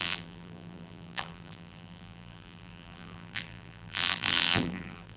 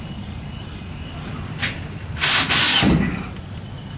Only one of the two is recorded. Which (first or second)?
second